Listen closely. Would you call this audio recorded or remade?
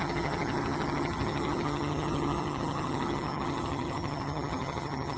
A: remade